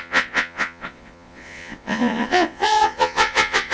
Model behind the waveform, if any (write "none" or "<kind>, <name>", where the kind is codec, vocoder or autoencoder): vocoder, Vocos